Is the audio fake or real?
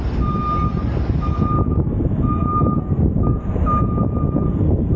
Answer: real